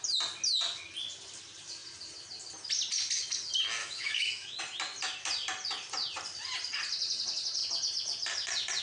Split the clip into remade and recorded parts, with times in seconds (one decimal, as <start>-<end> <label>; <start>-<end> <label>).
0.0-3.8 recorded; 3.8-4.6 remade; 4.6-8.8 recorded